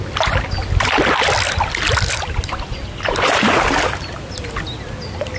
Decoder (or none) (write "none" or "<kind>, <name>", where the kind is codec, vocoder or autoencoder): none